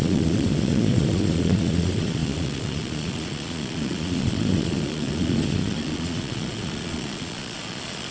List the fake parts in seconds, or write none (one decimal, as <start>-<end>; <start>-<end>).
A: 0.0-8.1